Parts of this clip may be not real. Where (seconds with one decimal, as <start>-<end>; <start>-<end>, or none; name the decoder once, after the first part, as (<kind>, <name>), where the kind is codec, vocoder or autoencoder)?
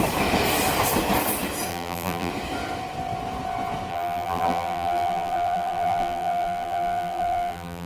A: 1.7-2.3 (vocoder, BigVGAN v2); 3.9-7.9